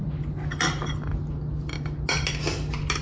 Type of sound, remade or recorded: recorded